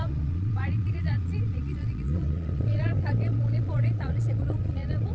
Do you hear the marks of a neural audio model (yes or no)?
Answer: yes